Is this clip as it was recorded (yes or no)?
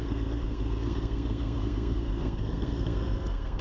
no